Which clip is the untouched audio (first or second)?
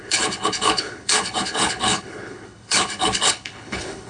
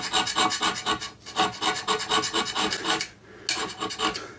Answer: second